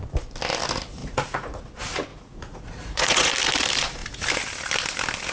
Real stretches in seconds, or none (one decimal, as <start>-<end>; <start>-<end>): 0.0-1.0; 1.6-2.1; 3.3-5.3